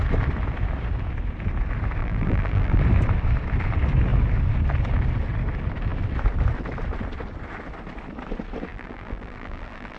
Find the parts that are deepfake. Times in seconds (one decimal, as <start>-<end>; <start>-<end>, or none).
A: 2.0-2.8; 8.7-10.0